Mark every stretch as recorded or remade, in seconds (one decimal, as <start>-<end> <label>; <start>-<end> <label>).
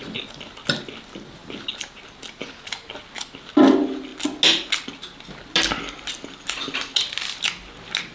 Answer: 0.0-8.1 recorded